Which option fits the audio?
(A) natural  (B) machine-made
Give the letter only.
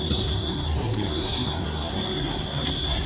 B